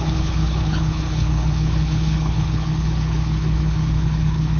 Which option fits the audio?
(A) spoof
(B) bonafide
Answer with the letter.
A